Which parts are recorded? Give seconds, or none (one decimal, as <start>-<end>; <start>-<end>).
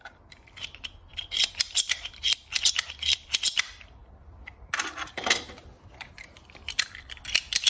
0.0-7.7